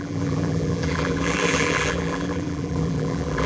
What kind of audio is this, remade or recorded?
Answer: remade